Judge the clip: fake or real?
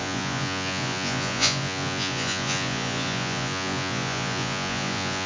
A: fake